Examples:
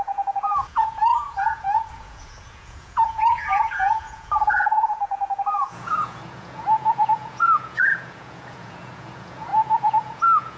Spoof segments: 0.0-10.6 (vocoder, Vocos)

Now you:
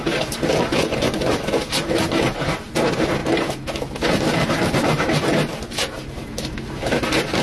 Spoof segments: 0.7-1.5 (vocoder, Vocos)

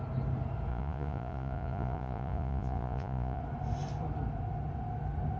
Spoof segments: 0.7-3.4 (vocoder, Vocos)

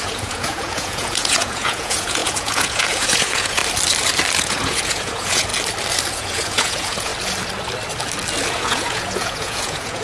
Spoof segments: 0.0-3.6 (vocoder, Vocos); 4.4-5.5; 6.1-7.1; 8.5-10.0